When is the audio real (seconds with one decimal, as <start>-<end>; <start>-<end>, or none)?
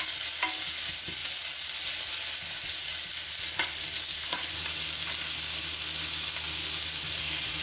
0.0-7.6